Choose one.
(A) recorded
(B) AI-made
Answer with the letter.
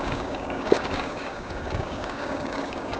B